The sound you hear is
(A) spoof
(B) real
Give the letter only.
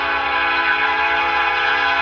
B